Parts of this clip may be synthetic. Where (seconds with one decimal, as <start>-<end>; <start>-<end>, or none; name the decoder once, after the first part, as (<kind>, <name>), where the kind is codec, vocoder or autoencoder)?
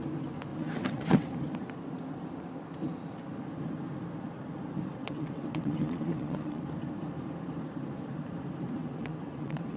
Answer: 0.5-1.3 (vocoder, WaveNeXt); 5.0-6.6; 8.8-9.8